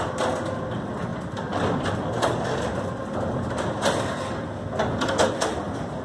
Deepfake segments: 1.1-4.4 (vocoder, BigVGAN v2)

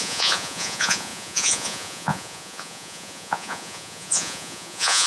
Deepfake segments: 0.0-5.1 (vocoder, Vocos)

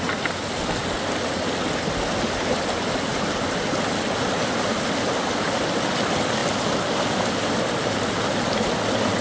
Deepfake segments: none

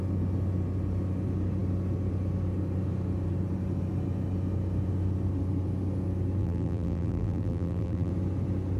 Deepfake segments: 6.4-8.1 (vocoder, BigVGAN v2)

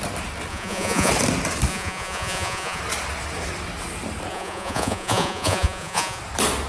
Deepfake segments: 0.5-1.1 (vocoder, Vocos); 1.7-2.8; 4.3-6.2

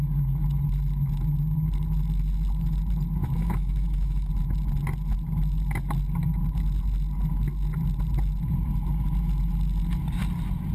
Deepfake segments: 3.2-4.3 (autoencoder, DAC-VAE)